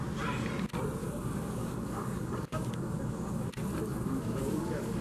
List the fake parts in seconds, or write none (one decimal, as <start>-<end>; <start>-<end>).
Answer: 1.0-3.5; 3.9-5.0